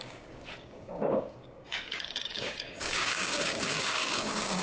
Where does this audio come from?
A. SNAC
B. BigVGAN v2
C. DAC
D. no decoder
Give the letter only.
C